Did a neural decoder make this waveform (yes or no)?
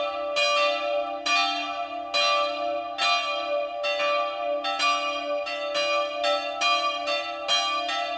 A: no